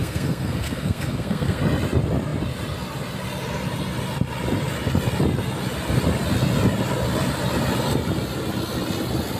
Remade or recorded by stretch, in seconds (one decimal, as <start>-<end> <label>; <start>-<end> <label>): 0.0-1.6 remade; 1.6-9.4 recorded